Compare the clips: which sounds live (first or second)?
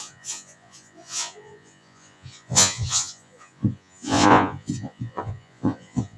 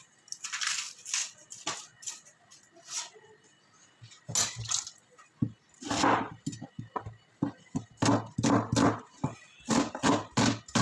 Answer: second